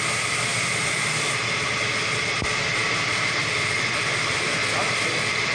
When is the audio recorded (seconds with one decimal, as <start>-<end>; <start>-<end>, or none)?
0.0-5.5